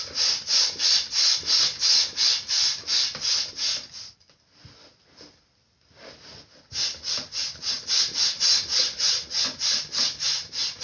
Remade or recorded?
recorded